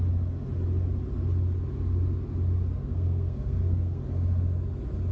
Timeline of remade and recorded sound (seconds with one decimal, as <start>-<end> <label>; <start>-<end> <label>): 0.0-2.8 recorded; 2.8-4.0 remade; 4.0-5.1 recorded